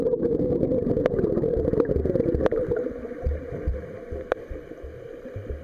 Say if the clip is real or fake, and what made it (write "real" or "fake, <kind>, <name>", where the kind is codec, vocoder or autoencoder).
real